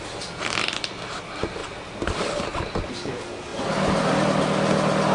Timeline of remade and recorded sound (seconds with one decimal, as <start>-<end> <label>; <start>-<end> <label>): 0.0-3.5 recorded; 3.5-4.2 remade; 4.2-5.1 recorded